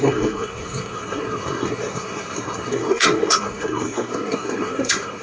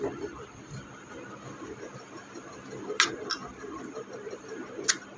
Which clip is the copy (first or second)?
first